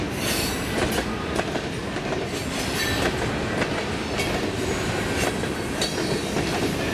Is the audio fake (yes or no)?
no